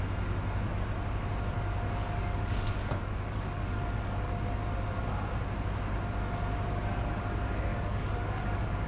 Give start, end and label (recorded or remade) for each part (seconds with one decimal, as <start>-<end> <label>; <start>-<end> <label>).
0.0-1.7 recorded; 1.7-4.4 remade; 4.4-7.7 recorded; 7.7-8.9 remade